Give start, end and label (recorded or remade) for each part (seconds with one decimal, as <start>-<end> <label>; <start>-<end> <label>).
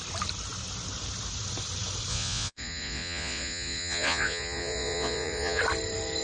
0.0-2.1 recorded; 2.1-5.6 remade; 5.6-6.2 recorded